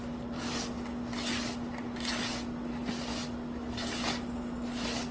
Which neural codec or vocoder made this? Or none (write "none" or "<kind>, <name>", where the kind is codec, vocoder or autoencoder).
none